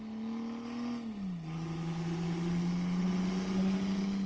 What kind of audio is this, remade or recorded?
recorded